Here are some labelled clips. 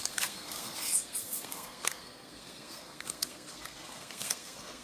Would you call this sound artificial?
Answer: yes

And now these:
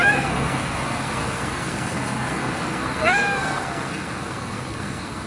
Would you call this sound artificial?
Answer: yes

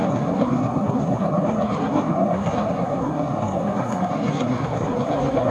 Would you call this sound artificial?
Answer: yes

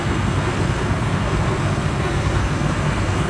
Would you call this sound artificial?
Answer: yes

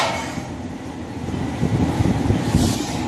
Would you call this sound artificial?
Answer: no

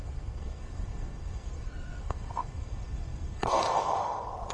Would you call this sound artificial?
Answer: yes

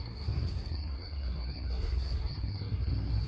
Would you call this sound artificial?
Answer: yes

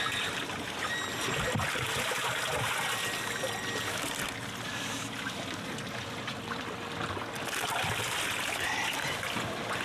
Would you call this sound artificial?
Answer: no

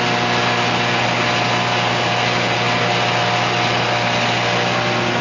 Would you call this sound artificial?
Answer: no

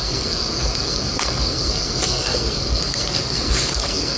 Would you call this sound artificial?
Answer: yes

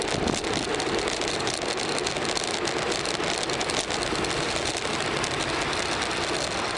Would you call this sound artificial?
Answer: no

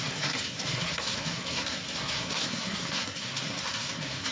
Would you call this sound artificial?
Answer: yes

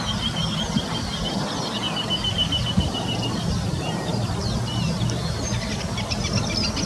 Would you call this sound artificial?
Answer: no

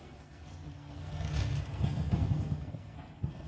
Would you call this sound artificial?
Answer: yes